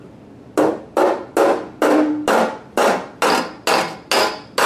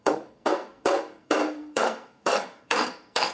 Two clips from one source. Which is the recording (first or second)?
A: first